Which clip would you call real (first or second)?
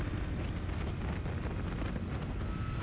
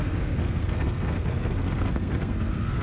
first